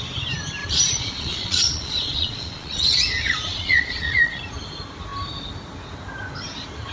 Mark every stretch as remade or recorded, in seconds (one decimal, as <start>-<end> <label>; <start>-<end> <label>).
0.0-0.6 recorded; 0.6-4.4 remade; 4.4-6.9 recorded